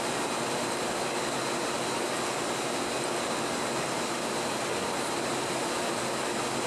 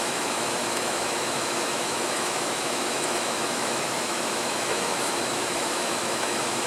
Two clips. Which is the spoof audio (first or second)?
second